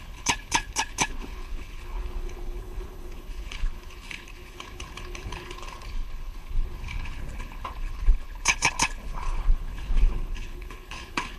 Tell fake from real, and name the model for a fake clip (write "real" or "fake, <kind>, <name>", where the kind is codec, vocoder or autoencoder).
fake, codec, HILCodec